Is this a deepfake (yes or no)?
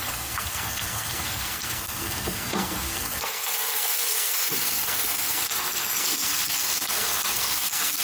yes